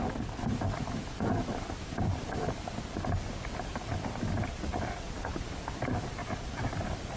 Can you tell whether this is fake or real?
real